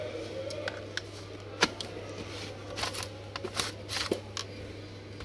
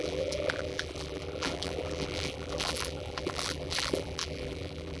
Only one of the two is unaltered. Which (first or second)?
first